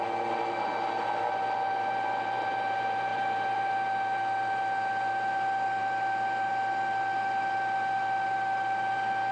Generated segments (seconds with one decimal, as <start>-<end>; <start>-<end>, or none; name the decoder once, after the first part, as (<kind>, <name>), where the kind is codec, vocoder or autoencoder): 3.1-3.7 (vocoder, BigVGAN v2)